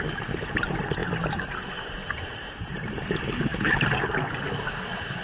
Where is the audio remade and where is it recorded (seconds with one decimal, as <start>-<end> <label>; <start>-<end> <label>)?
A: 0.0-5.2 recorded

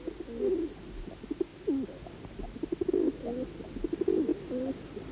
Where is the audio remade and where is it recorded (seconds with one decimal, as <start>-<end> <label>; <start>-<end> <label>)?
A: 0.0-5.1 recorded

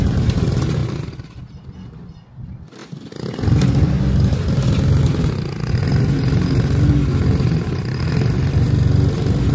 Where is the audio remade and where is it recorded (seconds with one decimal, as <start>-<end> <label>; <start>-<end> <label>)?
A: 0.0-0.8 recorded; 0.8-1.4 remade; 1.4-2.8 recorded; 2.8-4.0 remade; 4.0-9.5 recorded